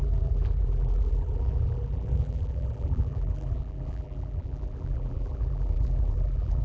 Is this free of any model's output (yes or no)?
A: no